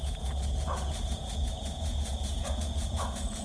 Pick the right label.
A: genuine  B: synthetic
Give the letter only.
B